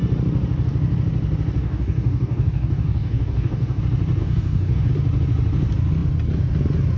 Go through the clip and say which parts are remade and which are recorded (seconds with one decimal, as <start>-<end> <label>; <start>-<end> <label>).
0.0-1.6 recorded; 1.6-3.8 remade; 3.8-4.2 recorded; 4.2-4.9 remade; 4.9-7.0 recorded